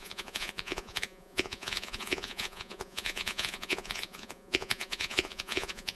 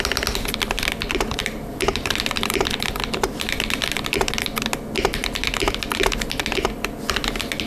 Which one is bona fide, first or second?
second